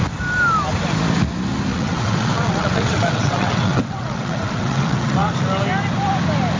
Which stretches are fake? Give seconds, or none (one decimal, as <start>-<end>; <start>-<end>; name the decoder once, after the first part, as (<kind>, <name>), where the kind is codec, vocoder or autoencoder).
1.7-5.3 (vocoder, WaveNeXt)